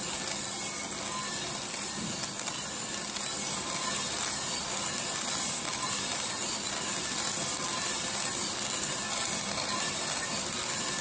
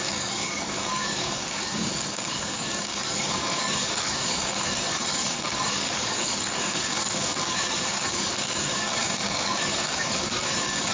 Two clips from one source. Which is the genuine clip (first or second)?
first